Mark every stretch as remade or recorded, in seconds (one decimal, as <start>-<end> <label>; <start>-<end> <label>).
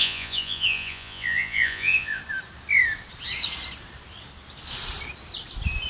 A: 0.0-2.2 remade; 2.2-5.9 recorded